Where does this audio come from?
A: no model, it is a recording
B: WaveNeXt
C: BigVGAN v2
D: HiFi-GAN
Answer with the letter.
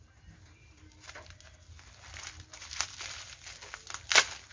A